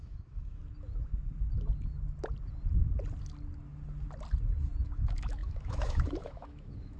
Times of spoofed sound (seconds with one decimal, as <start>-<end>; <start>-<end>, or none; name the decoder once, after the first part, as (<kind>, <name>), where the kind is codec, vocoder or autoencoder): 0.0-0.6 (autoencoder, DAC-VAE); 4.8-7.0